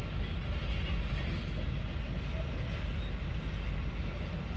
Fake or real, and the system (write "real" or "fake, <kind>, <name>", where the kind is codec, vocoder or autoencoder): real